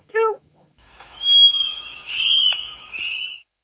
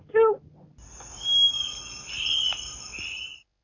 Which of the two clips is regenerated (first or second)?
first